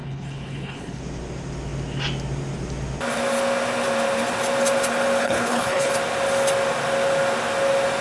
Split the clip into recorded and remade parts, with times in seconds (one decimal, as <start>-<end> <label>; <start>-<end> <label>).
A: 0.0-1.0 remade; 1.0-5.2 recorded; 5.2-5.9 remade; 5.9-8.0 recorded